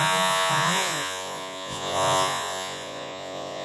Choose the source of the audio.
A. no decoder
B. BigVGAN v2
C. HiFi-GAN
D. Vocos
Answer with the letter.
D